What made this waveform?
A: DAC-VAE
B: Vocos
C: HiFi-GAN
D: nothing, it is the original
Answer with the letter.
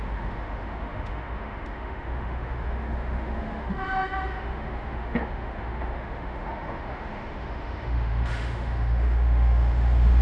A